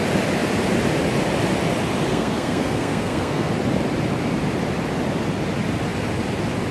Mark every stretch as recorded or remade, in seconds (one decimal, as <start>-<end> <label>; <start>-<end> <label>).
0.0-2.1 recorded; 2.1-3.5 remade; 3.5-6.7 recorded